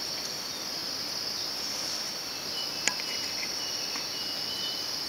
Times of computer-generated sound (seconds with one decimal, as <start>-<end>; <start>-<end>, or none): none